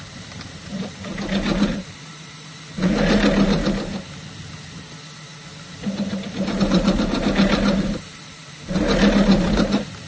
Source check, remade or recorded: recorded